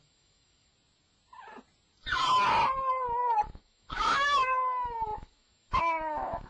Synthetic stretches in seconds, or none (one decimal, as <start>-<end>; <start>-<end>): 0.0-0.7; 3.4-6.5